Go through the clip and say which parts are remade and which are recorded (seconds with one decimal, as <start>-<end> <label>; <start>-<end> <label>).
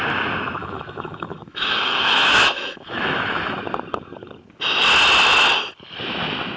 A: 0.0-0.6 recorded; 0.6-3.6 remade; 3.6-6.6 recorded